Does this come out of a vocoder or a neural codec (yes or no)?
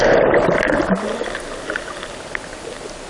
no